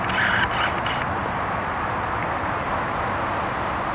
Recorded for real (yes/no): yes